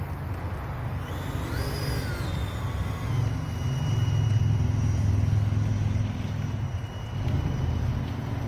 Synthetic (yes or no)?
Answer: no